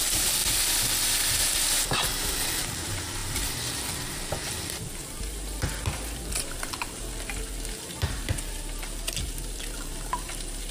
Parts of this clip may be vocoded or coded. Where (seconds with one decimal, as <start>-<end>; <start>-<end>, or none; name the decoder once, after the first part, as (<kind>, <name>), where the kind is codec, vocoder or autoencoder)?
0.0-0.4 (vocoder, BigVGAN v2); 1.4-10.7